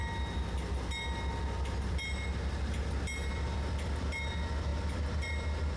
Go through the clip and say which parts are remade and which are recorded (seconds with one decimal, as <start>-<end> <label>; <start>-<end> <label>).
0.0-5.8 recorded